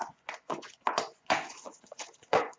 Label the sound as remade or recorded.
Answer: remade